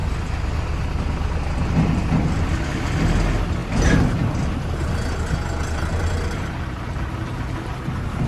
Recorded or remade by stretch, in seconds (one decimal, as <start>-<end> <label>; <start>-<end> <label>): 0.0-8.3 recorded